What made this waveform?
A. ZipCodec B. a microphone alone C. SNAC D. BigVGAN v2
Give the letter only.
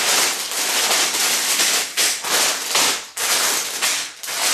B